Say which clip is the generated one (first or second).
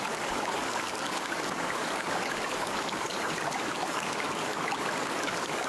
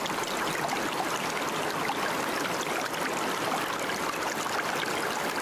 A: first